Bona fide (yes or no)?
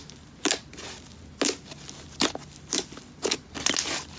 yes